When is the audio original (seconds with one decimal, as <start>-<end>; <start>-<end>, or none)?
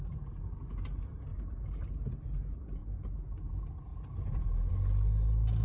0.0-3.9; 4.7-5.6